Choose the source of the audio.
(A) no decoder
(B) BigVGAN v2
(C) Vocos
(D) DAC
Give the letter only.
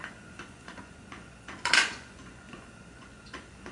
C